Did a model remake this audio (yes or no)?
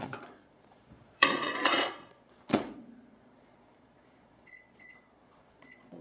yes